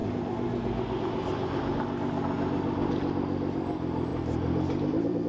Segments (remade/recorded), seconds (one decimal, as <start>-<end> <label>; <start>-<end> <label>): 0.0-4.1 recorded; 4.1-5.3 remade